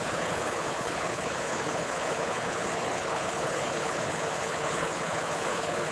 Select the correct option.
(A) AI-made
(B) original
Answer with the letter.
A